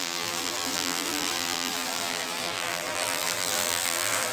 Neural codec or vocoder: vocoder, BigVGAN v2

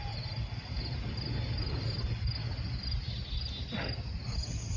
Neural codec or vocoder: none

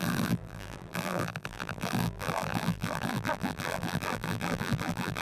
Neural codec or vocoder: vocoder, BigVGAN v2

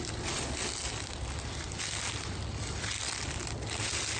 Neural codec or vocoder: none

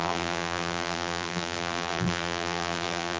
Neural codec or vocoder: vocoder, BigVGAN v2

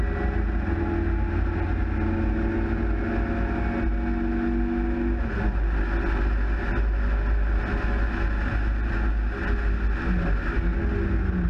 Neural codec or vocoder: none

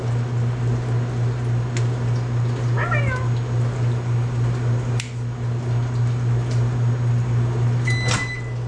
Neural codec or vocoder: none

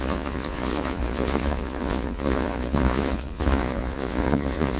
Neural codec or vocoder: vocoder, Vocos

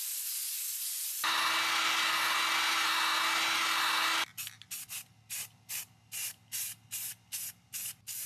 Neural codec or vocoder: none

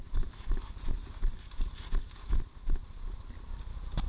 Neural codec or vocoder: none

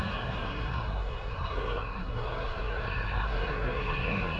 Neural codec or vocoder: codec, SNAC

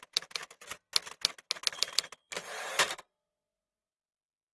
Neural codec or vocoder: none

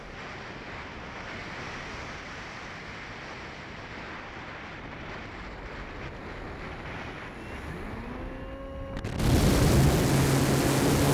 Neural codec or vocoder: none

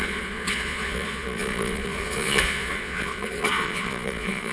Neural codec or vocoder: vocoder, Vocos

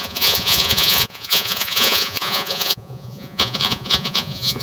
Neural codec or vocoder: vocoder, Vocos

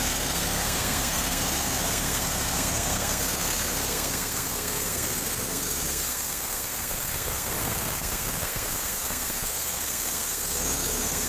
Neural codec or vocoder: codec, SNAC